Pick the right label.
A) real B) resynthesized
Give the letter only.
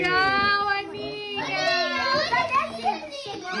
A